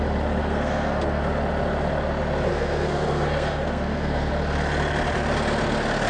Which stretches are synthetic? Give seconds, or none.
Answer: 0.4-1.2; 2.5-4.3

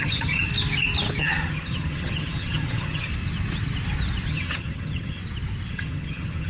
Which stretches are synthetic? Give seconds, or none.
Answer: 0.0-0.5; 1.2-3.1; 4.3-5.2; 5.7-6.5